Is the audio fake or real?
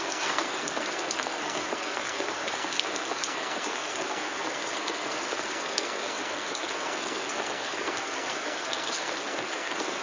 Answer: fake